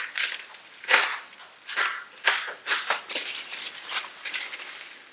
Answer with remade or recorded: recorded